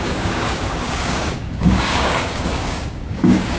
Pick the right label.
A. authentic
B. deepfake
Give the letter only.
B